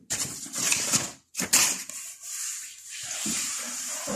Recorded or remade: remade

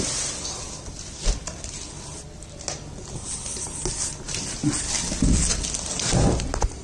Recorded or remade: recorded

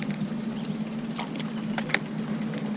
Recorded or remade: recorded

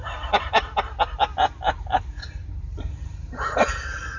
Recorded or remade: recorded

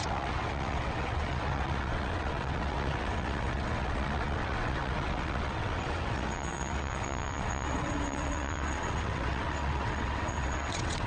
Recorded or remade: remade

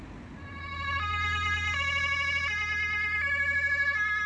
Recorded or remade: recorded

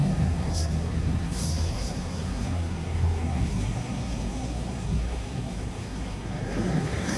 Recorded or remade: remade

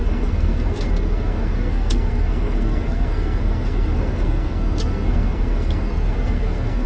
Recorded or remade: remade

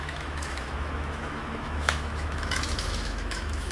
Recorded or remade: remade